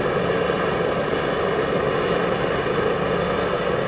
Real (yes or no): yes